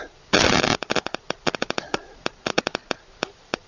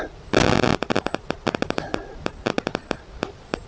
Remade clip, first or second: first